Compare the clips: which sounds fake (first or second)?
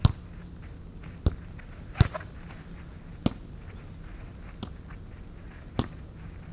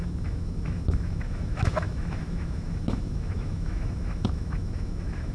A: second